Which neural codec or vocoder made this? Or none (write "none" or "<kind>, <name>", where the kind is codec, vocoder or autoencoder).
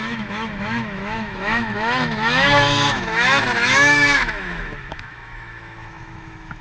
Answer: autoencoder, DAC-VAE